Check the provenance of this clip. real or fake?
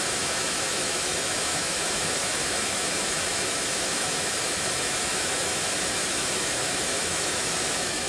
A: fake